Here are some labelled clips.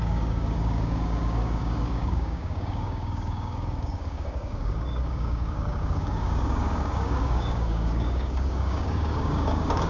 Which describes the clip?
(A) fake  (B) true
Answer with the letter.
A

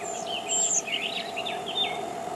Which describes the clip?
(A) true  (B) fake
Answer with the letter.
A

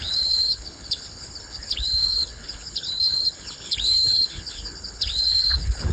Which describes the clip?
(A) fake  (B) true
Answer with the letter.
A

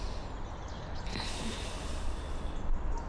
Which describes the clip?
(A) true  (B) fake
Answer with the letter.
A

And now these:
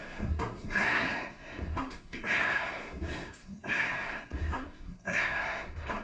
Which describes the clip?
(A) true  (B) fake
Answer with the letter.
B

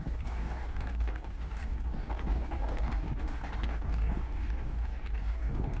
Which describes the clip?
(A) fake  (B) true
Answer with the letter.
A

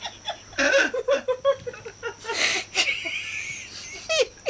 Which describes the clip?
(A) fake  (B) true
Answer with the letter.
B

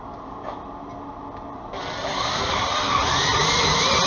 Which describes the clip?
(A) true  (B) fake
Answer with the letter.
A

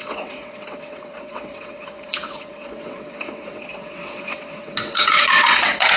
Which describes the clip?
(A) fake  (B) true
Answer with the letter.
A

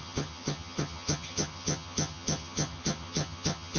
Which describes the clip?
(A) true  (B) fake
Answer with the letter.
B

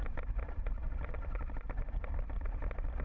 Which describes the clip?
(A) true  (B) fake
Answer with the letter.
A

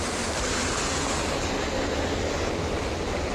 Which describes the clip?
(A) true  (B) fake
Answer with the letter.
A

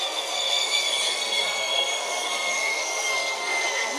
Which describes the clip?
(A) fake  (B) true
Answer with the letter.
A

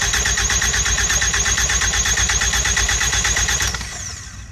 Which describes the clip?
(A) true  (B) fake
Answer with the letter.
A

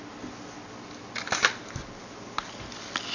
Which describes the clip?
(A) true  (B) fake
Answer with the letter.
A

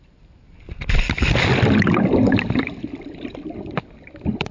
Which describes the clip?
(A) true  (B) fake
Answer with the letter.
B